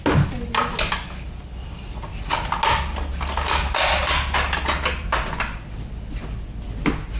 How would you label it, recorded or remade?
recorded